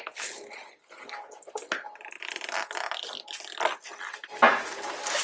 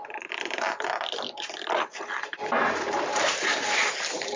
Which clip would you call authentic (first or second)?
first